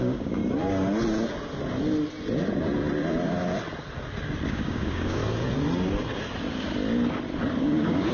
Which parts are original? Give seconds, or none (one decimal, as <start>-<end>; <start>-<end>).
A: 0.4-4.5; 5.2-7.6